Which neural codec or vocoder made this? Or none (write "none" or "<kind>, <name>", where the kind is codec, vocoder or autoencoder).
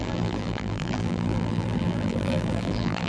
vocoder, BigVGAN v2